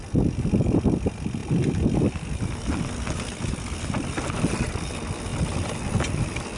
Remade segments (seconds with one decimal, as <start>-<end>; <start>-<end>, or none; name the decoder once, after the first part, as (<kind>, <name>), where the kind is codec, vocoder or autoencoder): none